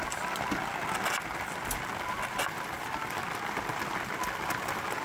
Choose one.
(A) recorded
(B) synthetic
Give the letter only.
A